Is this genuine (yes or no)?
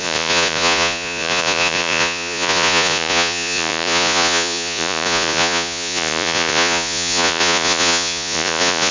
no